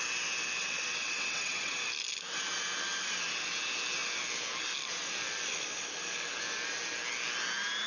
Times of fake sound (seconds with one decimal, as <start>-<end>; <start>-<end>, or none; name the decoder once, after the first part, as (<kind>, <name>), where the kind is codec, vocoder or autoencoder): 0.6-1.8 (vocoder, WaveNeXt)